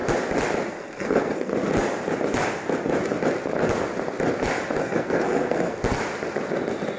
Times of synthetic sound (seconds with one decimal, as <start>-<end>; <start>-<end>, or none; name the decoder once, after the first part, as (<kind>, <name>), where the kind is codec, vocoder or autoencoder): 0.7-1.5 (codec, SNAC); 4.8-5.8